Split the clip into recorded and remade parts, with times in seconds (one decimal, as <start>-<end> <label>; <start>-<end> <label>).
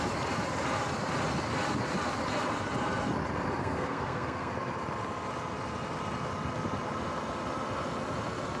0.0-3.6 recorded; 3.6-4.5 remade; 4.5-8.6 recorded